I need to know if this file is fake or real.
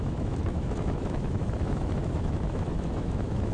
fake